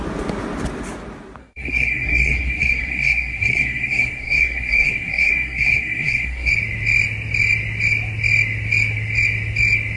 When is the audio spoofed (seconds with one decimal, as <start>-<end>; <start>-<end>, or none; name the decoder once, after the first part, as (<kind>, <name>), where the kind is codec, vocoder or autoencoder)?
1.4-6.5 (codec, SNAC)